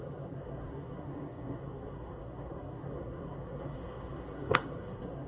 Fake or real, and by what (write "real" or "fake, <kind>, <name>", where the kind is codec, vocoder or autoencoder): fake, codec, SNAC